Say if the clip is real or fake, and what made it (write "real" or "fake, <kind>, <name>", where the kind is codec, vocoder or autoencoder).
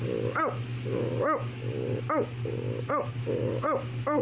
real